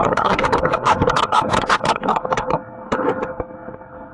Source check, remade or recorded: remade